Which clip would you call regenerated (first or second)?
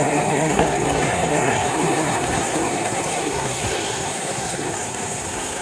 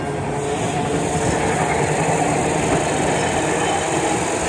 first